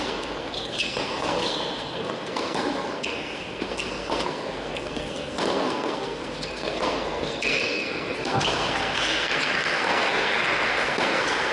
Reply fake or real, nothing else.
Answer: fake